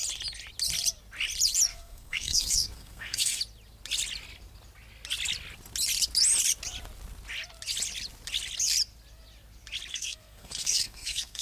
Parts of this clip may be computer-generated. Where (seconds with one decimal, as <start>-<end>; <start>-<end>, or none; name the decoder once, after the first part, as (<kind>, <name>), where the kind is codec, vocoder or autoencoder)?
1.7-3.4 (codec, SNAC); 9.9-11.4